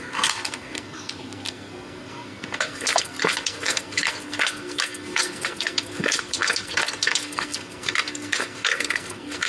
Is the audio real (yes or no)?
no